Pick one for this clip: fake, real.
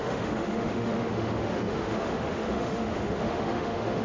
fake